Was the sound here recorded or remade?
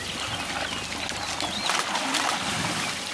recorded